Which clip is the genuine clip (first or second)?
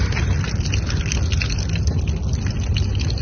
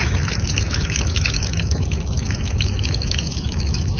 first